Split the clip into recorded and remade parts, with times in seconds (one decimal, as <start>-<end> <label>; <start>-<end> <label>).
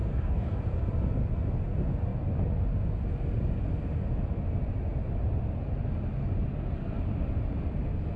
0.0-0.6 remade; 0.6-8.2 recorded